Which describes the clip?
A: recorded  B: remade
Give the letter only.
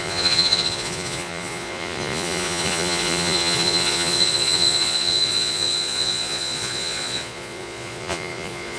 B